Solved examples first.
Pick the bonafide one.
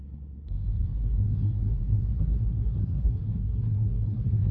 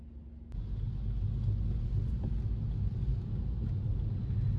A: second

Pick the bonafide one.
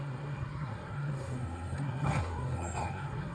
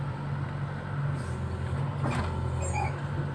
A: second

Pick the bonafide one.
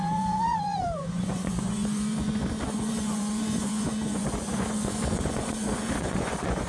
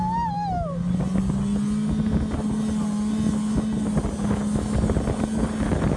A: second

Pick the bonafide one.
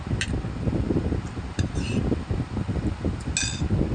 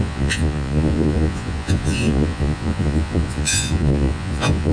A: first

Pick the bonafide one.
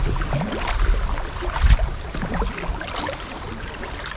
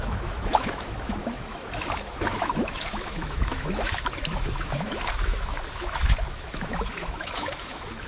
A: first